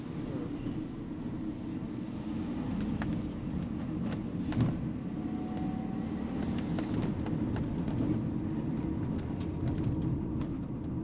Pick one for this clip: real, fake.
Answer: real